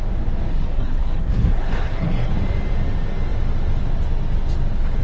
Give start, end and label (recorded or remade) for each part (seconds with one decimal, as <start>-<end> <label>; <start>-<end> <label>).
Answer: 0.0-0.5 recorded; 0.5-2.3 remade; 2.3-5.0 recorded